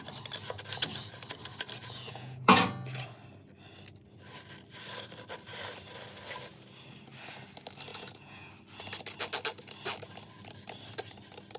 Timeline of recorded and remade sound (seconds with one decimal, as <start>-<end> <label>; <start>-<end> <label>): 0.0-1.8 recorded; 1.8-2.6 remade; 2.6-7.9 recorded; 7.9-8.5 remade; 8.5-11.6 recorded